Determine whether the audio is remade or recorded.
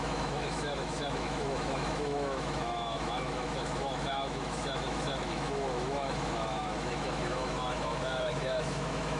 remade